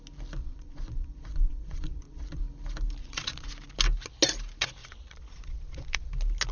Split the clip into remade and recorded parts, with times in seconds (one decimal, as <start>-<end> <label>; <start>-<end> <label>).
0.0-0.4 recorded; 0.4-2.4 remade; 2.4-3.0 recorded; 3.0-3.5 remade; 3.5-4.8 recorded; 4.8-6.1 remade; 6.1-6.5 recorded